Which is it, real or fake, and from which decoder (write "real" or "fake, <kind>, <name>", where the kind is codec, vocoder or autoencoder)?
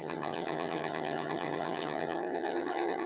fake, vocoder, HiFi-GAN